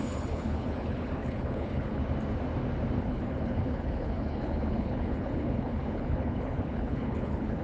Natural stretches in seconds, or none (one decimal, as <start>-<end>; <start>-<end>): 2.0-3.0